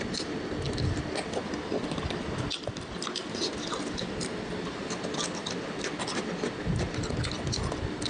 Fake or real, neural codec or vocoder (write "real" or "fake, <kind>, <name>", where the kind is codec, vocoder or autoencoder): real